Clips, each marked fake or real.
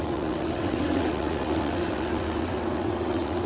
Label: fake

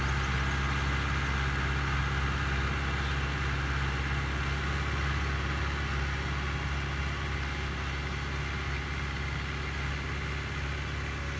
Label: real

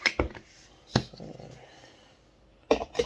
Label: real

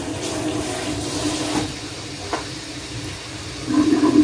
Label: real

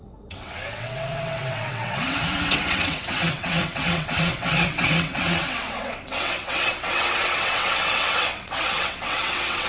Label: fake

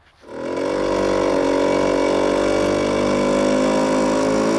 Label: real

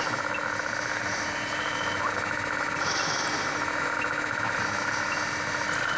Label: real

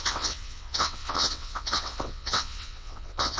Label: fake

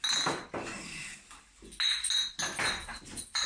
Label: real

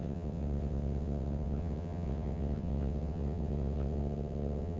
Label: fake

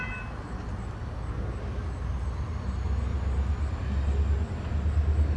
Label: real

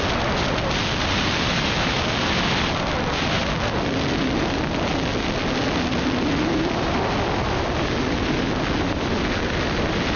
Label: real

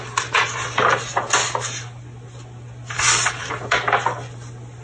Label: real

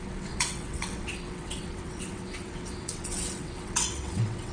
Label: fake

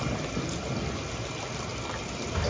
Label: real